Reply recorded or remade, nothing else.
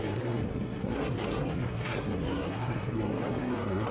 remade